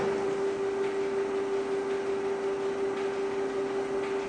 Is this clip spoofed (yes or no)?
no